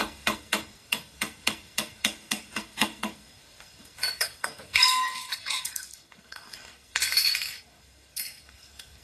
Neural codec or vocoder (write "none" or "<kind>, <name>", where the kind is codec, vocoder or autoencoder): codec, SNAC